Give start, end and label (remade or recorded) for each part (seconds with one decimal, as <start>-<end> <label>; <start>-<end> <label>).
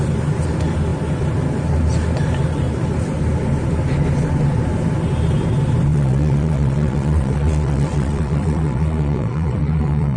0.0-5.9 recorded; 5.9-10.2 remade